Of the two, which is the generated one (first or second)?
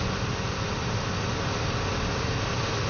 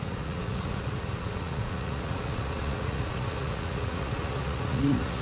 second